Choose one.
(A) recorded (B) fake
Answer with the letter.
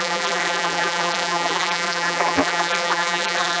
B